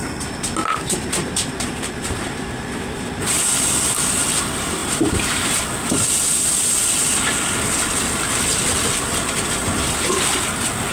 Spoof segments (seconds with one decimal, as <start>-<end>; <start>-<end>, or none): 0.6-2.5; 4.8-5.6